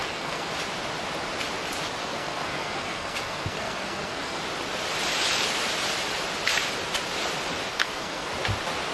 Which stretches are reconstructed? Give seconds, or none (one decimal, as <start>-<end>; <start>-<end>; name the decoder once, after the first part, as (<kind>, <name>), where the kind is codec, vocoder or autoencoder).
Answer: 0.0-0.5 (codec, SNAC); 2.0-4.4; 7.7-8.3